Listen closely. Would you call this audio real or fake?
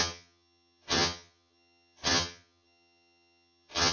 fake